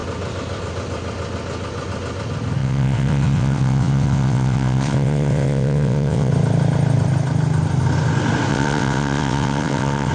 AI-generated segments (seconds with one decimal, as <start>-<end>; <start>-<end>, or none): 2.6-6.3; 8.5-10.1